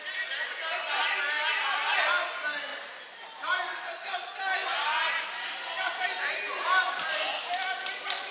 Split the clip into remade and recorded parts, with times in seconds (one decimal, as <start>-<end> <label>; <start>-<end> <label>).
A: 0.0-8.3 recorded